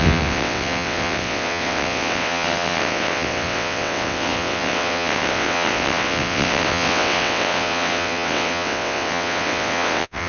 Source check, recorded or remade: remade